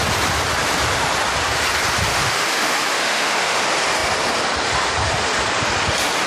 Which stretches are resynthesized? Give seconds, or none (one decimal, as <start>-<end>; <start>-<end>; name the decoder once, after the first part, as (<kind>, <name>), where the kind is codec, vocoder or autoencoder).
2.1-3.6 (autoencoder, DAC-VAE)